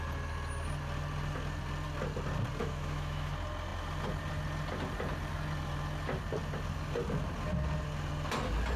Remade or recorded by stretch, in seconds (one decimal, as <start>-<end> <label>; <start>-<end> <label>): 0.0-2.6 recorded; 2.6-3.3 remade; 3.3-8.8 recorded